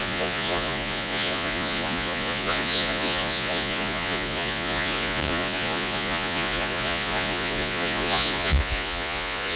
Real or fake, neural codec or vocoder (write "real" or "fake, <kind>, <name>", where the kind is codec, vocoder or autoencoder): fake, vocoder, Vocos